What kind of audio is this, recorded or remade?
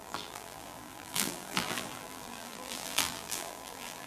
remade